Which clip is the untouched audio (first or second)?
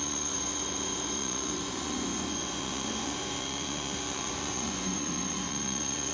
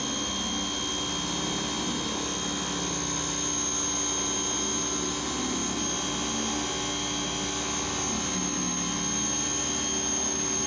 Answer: second